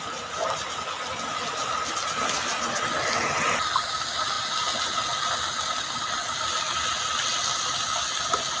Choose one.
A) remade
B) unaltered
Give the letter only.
B